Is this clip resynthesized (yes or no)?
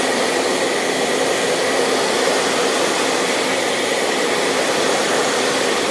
no